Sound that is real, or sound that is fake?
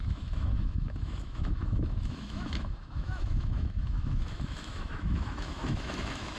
fake